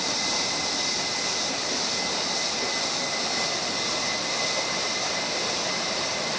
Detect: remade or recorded recorded